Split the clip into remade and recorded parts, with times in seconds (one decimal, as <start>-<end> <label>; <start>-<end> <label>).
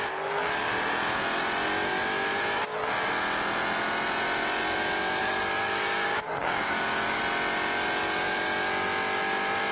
0.0-5.2 recorded; 5.2-7.2 remade; 7.2-9.7 recorded